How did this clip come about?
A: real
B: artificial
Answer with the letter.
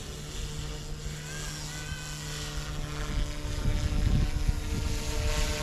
A